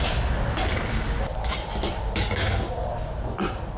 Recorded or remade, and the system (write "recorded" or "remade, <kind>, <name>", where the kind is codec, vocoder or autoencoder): recorded